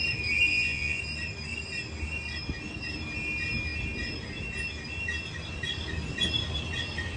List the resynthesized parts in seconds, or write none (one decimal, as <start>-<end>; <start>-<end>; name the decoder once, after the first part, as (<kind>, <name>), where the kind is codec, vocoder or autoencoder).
0.5-1.0 (vocoder, Vocos)